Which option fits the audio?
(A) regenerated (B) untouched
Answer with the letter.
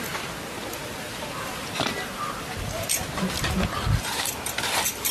B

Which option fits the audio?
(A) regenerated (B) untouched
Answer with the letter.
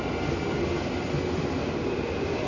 B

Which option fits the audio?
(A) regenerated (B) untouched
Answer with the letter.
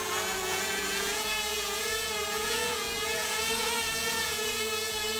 A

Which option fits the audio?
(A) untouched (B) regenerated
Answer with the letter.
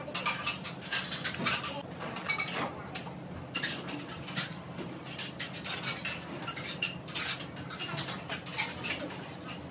A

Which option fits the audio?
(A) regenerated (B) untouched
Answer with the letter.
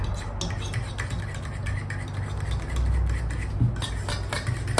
B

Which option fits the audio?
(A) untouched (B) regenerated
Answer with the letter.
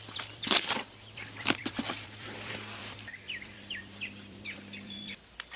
B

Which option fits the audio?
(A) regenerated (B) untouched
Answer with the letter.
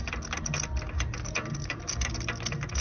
B